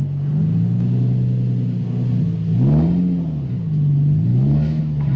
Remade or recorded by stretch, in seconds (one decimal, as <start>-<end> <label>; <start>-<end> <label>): 0.0-4.3 recorded; 4.3-4.8 remade; 4.8-5.2 recorded